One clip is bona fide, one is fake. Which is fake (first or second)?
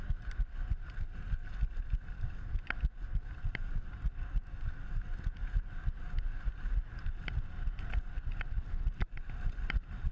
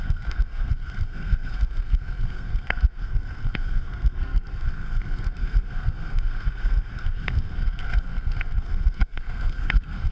second